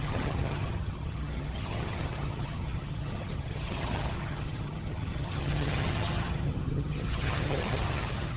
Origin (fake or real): fake